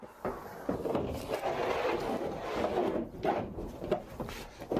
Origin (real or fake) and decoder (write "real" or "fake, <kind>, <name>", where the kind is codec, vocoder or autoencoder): real